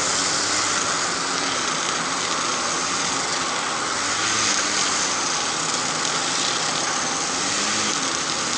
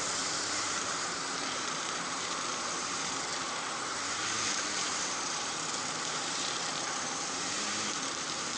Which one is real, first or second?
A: first